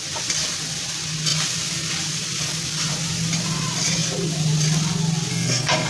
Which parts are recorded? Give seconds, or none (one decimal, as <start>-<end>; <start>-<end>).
0.0-5.3